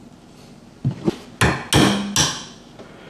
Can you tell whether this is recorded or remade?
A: recorded